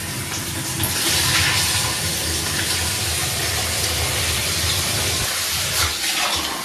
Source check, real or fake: real